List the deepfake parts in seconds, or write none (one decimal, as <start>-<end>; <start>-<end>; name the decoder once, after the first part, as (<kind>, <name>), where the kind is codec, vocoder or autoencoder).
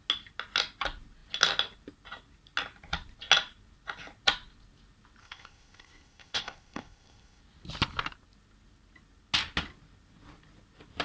5.2-7.4 (codec, ZipCodec)